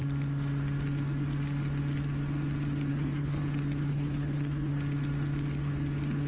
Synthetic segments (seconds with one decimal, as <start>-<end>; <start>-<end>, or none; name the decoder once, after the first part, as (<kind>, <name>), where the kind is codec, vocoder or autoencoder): 2.9-3.4 (codec, HILCodec); 3.9-4.7